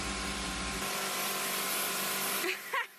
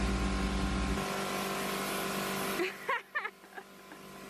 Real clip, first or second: second